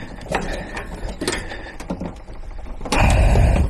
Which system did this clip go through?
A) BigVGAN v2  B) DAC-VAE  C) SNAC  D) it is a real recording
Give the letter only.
D